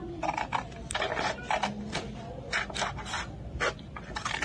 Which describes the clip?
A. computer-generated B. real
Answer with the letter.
B